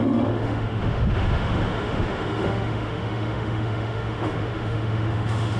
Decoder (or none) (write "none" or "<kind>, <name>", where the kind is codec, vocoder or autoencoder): autoencoder, DAC-VAE